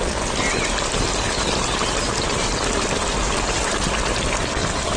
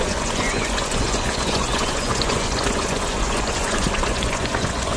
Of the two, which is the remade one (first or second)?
second